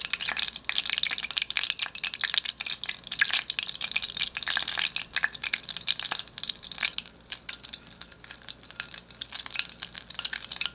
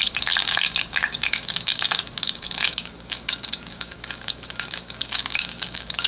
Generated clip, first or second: second